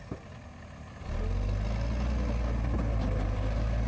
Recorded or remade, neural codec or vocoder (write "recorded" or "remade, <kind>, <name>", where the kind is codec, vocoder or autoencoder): recorded